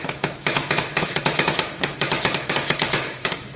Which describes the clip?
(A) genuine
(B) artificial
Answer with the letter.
B